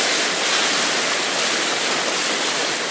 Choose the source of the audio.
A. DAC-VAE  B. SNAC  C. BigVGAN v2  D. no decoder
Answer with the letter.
D